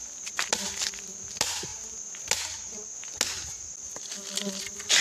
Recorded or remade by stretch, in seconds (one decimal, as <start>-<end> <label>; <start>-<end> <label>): 0.0-5.0 recorded